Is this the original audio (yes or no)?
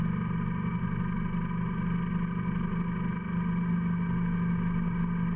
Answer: yes